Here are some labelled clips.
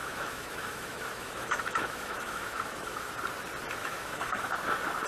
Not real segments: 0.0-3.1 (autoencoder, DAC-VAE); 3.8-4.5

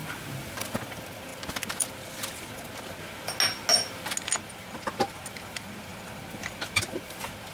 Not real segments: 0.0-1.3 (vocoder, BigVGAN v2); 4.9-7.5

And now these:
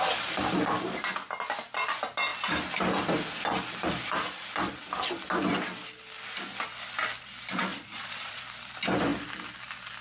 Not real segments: 7.7-8.4 (vocoder, Vocos)

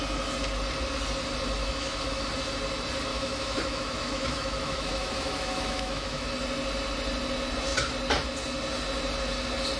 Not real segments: 1.6-2.3 (autoencoder, DAC-VAE); 3.1-6.3